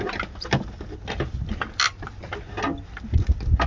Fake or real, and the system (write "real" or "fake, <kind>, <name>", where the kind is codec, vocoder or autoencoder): real